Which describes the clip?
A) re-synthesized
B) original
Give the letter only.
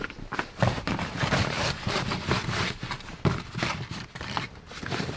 B